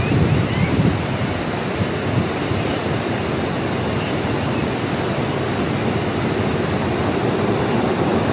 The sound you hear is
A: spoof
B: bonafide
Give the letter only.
B